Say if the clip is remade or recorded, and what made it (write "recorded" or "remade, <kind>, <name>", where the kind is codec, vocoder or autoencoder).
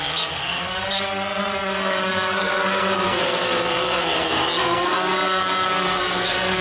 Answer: remade, codec, SNAC